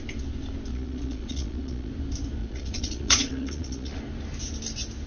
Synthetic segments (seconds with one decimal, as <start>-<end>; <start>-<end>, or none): 0.7-1.9; 2.4-4.0